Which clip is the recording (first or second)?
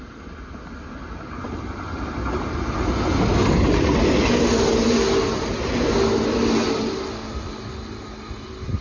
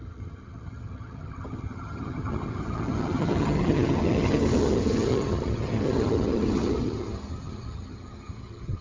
first